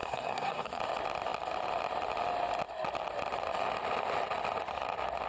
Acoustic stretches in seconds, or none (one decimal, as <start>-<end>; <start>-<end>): 0.8-5.3